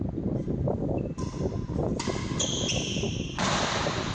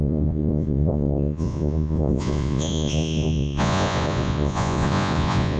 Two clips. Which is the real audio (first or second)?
first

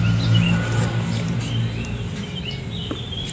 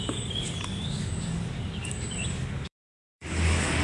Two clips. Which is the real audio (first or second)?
first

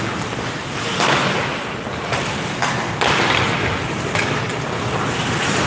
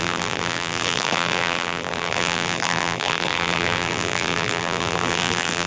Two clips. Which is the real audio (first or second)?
first